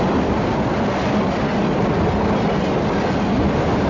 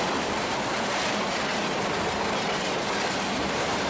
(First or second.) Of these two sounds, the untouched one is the first